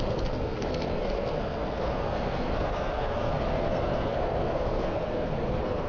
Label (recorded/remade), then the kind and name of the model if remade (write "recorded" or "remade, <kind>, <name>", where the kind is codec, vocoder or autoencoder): remade, codec, SNAC